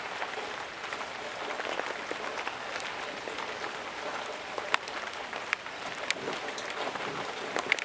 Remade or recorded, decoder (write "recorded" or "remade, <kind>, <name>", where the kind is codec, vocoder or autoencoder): recorded